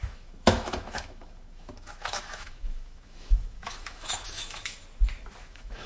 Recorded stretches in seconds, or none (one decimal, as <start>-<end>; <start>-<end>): 4.8-5.4